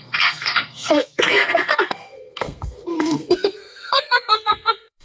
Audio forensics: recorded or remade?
remade